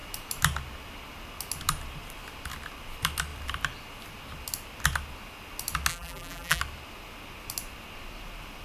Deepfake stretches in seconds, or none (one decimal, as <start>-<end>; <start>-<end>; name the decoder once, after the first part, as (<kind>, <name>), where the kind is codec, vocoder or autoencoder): 5.9-6.6 (vocoder, BigVGAN v2)